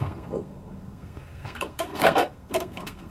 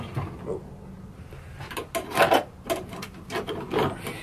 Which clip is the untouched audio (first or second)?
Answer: second